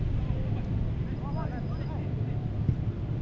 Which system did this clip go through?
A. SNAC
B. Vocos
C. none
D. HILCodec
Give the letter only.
C